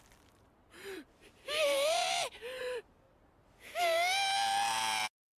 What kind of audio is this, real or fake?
real